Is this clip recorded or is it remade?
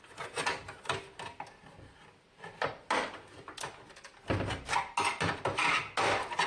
recorded